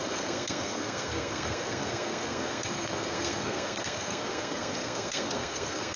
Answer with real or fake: fake